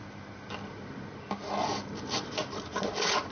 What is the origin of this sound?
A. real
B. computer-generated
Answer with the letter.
A